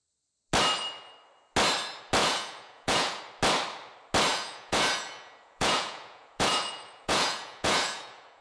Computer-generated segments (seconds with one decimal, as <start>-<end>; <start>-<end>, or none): 2.2-3.2; 4.3-8.4